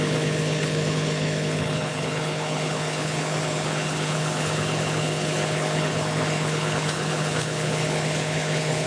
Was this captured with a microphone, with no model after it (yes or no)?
no